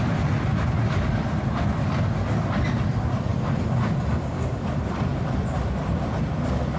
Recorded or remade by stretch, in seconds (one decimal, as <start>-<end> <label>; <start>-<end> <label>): 0.0-6.8 recorded